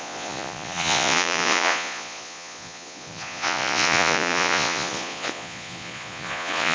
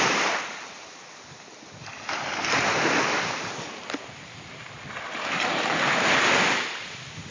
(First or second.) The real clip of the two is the second